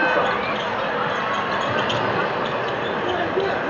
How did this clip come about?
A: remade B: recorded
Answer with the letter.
B